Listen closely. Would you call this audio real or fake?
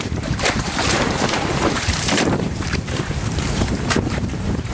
fake